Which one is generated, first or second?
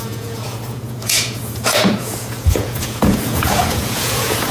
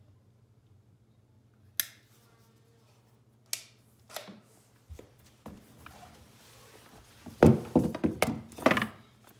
first